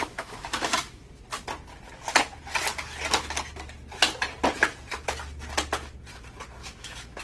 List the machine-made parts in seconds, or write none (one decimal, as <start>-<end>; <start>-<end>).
0.0-1.0; 6.6-7.2